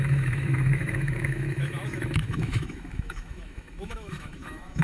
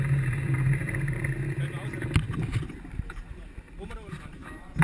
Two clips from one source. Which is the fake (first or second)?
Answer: first